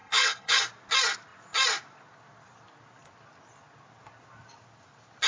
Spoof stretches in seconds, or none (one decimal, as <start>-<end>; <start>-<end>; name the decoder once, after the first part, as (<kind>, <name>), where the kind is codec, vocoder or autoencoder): 0.0-0.6 (codec, HILCodec)